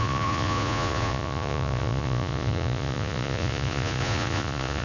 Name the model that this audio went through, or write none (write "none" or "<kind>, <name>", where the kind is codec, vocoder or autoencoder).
vocoder, Vocos